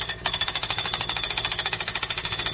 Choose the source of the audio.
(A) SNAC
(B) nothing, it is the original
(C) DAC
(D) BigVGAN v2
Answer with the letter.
C